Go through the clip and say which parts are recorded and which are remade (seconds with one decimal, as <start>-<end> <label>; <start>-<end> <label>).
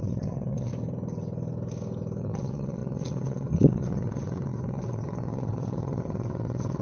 0.0-0.7 remade; 0.7-2.2 recorded; 2.2-6.8 remade